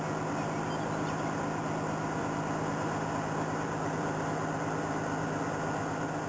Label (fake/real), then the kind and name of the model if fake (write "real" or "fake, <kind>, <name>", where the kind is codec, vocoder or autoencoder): real